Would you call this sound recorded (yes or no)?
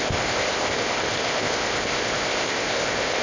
no